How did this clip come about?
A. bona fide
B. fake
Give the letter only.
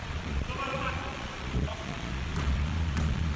B